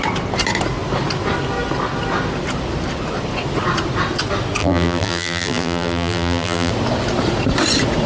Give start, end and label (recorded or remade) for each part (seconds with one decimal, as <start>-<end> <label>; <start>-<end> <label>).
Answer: 0.0-4.6 recorded; 4.6-6.7 remade; 6.7-8.1 recorded